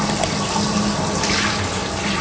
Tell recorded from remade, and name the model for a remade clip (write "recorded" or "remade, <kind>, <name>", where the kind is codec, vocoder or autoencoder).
recorded